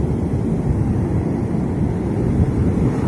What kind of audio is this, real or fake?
real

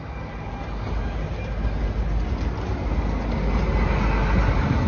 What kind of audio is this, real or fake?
real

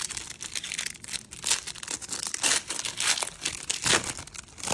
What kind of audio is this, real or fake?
real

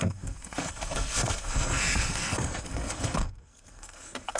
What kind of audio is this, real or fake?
fake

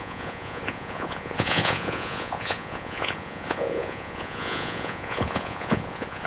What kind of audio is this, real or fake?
fake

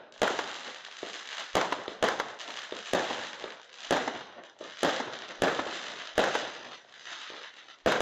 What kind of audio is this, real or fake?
real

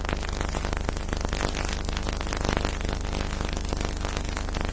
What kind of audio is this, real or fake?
real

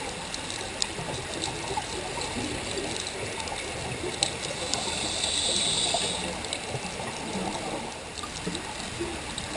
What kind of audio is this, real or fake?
real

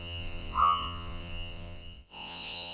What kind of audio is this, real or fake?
fake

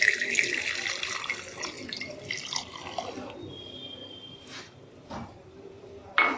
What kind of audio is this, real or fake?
real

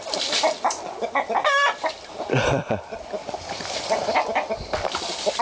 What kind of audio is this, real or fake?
real